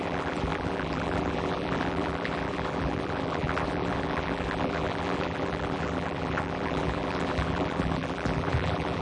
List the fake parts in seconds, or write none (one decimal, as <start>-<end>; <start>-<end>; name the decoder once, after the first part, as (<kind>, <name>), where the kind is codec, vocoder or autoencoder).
0.0-9.0 (vocoder, BigVGAN v2)